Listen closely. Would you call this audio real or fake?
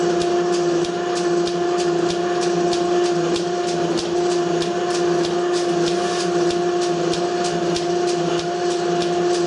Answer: real